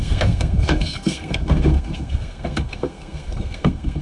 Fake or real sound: fake